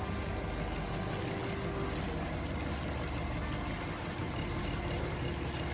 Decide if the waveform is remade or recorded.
recorded